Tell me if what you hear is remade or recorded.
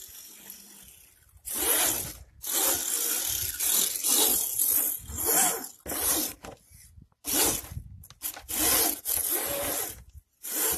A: recorded